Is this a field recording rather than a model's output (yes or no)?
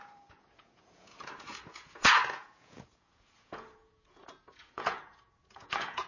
no